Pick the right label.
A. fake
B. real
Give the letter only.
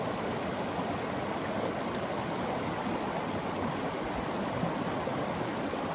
B